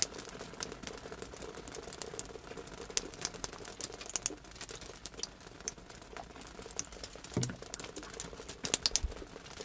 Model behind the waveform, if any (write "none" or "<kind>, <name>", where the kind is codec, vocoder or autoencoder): none